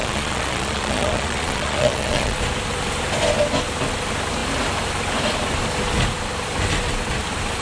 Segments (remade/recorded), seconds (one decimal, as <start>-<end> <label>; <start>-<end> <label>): 0.0-2.4 remade; 2.4-7.6 recorded